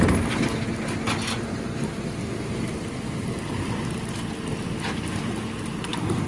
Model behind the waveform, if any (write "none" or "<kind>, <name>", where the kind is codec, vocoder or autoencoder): none